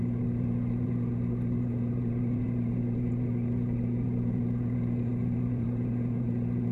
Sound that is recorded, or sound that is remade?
remade